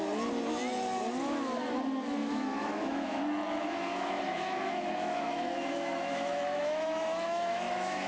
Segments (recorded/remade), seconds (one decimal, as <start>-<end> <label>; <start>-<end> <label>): 0.0-2.2 recorded; 2.2-3.2 remade; 3.2-3.6 recorded; 3.6-8.1 remade